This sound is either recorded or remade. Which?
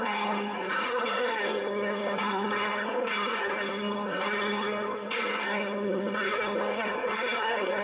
remade